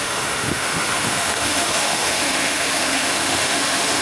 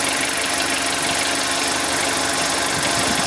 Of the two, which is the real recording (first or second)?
second